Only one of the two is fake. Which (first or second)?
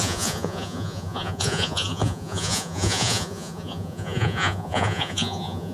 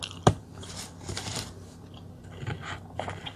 first